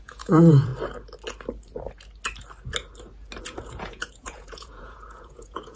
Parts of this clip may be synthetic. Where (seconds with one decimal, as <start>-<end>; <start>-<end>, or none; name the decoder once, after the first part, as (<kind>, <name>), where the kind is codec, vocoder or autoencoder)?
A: 0.0-0.7 (vocoder, Vocos); 3.4-5.8